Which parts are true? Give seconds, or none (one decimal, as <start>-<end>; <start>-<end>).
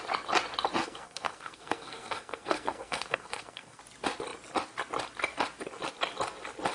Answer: 0.0-0.8; 3.8-6.7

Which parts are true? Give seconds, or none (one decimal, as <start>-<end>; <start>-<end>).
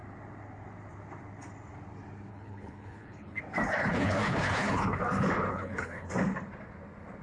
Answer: 0.0-2.3; 3.4-3.8; 5.0-5.5; 6.1-7.2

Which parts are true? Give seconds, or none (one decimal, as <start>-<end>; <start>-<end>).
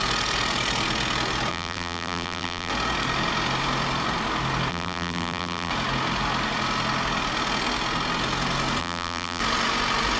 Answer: 0.0-1.5; 2.7-4.7; 5.7-8.8; 9.4-10.2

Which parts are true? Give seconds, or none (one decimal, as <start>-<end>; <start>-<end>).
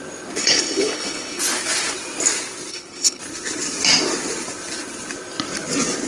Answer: 0.0-0.4; 1.4-2.7; 3.2-6.1